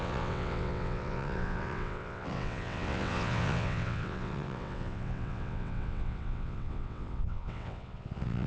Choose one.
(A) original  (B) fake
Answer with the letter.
B